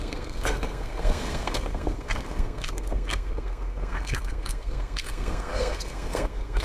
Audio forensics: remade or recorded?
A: remade